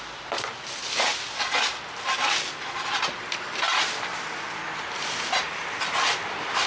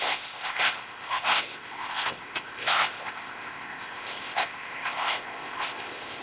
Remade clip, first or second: second